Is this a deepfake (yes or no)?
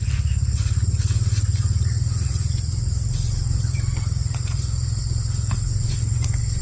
yes